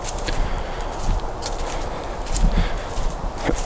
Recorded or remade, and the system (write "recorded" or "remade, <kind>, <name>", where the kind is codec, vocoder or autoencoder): recorded